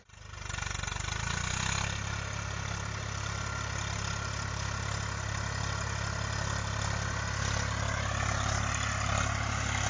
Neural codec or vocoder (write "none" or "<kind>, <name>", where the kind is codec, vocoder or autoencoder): none